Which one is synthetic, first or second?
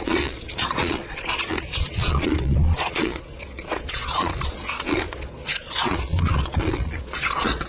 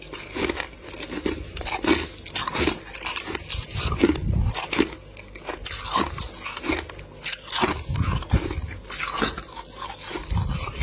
first